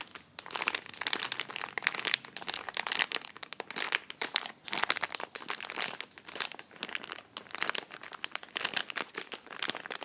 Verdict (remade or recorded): recorded